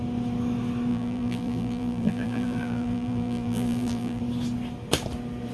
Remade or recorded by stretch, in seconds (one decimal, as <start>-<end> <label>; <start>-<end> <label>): 0.0-0.9 recorded; 0.9-4.2 remade; 4.2-5.5 recorded